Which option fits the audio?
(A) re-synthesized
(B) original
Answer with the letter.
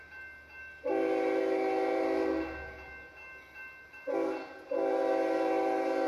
B